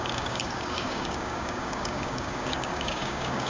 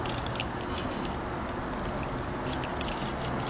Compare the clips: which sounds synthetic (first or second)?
first